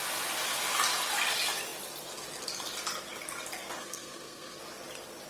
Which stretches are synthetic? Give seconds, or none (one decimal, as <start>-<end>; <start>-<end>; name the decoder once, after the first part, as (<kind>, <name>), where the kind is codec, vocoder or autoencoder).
3.8-4.6 (codec, SNAC)